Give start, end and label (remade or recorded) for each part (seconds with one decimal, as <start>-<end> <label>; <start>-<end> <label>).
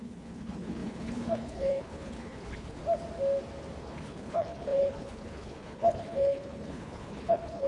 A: 0.0-2.8 remade; 2.8-3.8 recorded; 3.8-7.7 remade